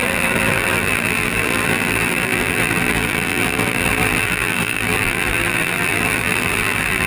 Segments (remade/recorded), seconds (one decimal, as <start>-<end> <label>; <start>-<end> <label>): 0.0-7.1 remade